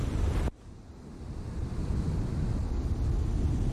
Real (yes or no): yes